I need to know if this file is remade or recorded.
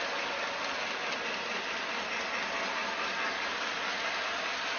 recorded